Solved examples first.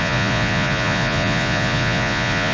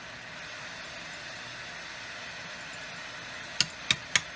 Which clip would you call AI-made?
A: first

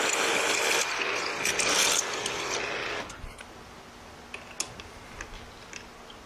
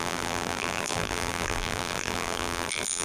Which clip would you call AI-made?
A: second